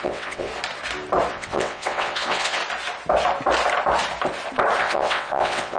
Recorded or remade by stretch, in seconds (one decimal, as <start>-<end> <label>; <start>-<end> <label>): 0.0-0.5 remade; 0.5-1.3 recorded; 1.3-2.6 remade; 2.6-4.8 recorded; 4.8-5.8 remade